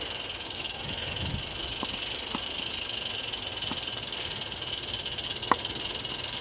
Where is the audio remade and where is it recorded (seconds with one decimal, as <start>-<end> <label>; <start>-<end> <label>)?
0.0-0.4 recorded; 0.4-0.9 remade; 0.9-6.4 recorded